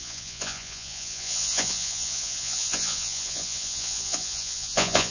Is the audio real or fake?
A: fake